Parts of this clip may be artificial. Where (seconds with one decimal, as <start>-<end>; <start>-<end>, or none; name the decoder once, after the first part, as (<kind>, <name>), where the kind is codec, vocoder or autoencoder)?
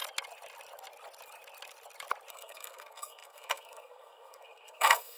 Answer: 2.3-5.2 (codec, SNAC)